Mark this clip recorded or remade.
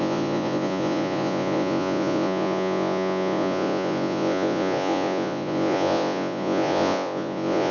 remade